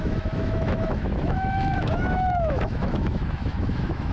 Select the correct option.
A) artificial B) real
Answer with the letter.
A